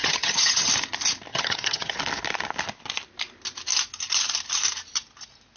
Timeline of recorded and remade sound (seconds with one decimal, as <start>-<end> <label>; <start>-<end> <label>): 0.0-0.7 remade; 0.7-1.3 recorded; 1.3-1.9 remade; 1.9-5.6 recorded